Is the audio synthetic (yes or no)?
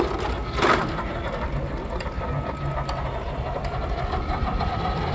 no